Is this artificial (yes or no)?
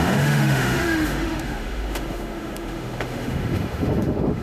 yes